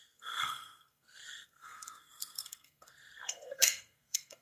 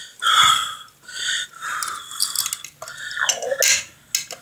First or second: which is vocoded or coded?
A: first